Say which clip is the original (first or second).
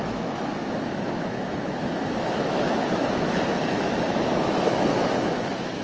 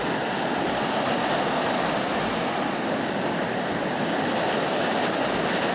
second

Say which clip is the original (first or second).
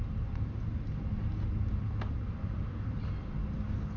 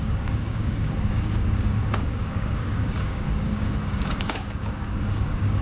first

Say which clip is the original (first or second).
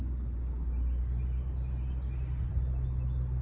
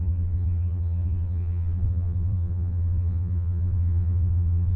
first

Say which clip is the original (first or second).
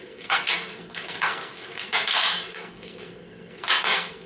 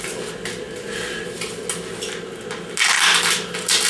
second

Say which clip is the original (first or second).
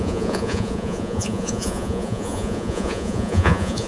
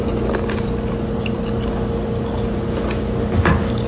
second